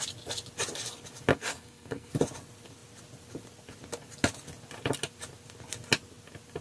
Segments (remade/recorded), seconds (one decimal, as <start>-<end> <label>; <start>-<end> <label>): 0.0-1.3 recorded; 1.3-2.1 remade; 2.1-6.6 recorded